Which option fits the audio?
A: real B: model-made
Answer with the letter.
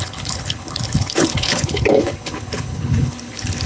B